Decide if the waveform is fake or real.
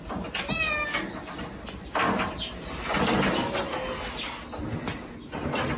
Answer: real